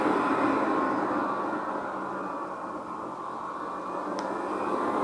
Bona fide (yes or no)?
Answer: yes